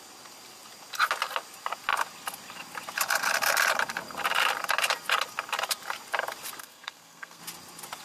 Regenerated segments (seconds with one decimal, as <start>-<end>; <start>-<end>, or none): 6.6-7.4